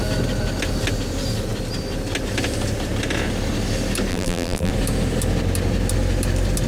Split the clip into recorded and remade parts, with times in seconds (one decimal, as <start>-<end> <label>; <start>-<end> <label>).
0.0-4.1 recorded; 4.1-4.7 remade; 4.7-6.7 recorded